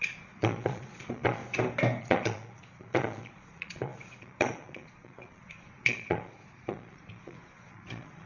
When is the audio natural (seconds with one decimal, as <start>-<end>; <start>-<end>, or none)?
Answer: 1.4-2.0